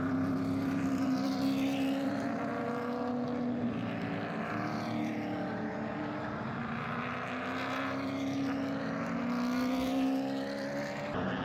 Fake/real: real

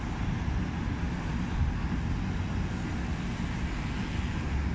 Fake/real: real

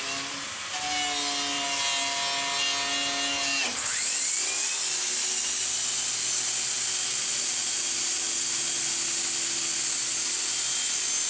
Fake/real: real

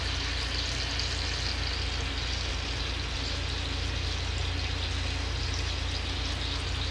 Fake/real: real